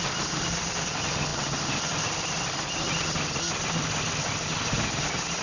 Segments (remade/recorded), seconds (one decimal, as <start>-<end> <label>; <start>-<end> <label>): 0.0-5.4 recorded